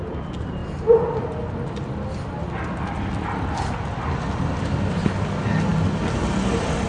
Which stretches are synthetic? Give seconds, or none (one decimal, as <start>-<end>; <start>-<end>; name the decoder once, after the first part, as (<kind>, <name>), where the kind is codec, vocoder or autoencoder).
none